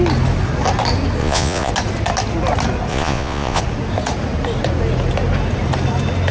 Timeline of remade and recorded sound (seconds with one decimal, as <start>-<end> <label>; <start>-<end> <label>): 0.0-1.2 recorded; 1.2-1.7 remade; 1.7-2.9 recorded; 2.9-3.6 remade; 3.6-6.3 recorded